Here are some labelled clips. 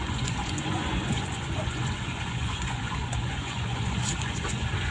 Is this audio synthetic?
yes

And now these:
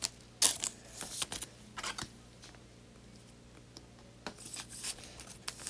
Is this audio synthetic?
no